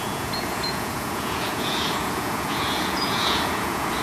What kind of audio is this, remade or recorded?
remade